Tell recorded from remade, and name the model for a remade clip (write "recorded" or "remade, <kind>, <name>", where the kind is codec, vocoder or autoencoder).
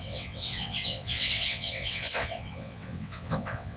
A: remade, vocoder, WaveNeXt